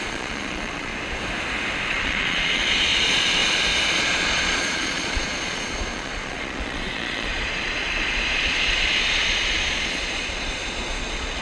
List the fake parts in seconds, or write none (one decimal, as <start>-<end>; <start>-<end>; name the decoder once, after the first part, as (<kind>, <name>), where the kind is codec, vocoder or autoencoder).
0.0-0.9 (vocoder, Vocos); 1.9-3.4; 3.9-11.4